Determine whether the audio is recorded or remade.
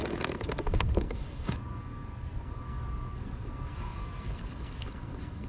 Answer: remade